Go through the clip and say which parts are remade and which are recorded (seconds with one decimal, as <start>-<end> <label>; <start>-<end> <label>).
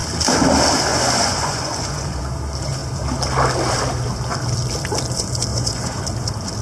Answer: 0.0-0.9 recorded; 0.9-2.2 remade; 2.2-5.5 recorded; 5.5-6.0 remade; 6.0-6.6 recorded